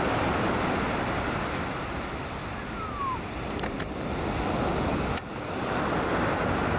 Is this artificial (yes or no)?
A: no